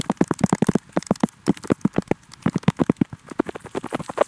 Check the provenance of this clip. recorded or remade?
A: recorded